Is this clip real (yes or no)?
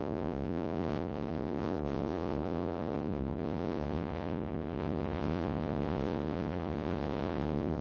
no